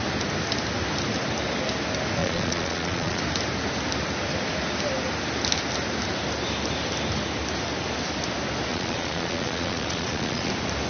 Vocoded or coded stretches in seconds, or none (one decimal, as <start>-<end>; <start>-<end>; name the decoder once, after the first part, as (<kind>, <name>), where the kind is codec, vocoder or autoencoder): 2.2-3.2 (vocoder, Vocos); 8.7-10.5